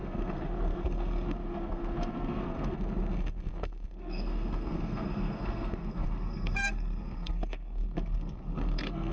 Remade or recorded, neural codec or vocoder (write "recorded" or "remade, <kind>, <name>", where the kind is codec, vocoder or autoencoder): remade, codec, SNAC